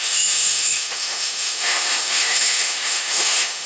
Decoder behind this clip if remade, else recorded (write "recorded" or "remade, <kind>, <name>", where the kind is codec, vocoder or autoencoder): remade, autoencoder, DAC-VAE